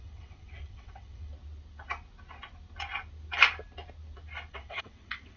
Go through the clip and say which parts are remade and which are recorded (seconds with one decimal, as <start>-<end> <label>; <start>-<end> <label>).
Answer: 0.0-1.3 remade; 1.3-4.5 recorded; 4.5-5.4 remade